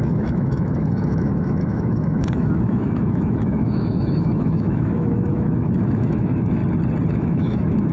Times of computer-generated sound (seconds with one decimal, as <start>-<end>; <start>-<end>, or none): 0.0-6.6; 7.1-7.9